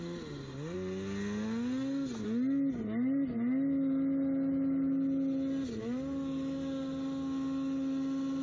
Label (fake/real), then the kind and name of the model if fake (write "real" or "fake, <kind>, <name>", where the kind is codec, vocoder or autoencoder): real